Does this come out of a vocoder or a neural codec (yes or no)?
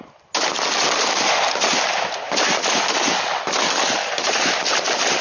no